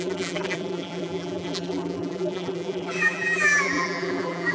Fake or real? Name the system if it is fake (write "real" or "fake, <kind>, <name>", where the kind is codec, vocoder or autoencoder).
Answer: fake, vocoder, BigVGAN v2